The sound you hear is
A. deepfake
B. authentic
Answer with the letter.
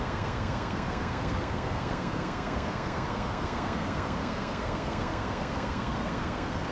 A